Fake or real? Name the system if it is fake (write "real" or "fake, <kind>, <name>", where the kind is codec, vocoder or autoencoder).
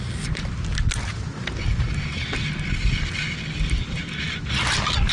real